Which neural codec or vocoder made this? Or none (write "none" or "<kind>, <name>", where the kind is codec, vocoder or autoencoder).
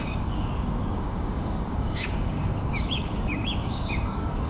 codec, DAC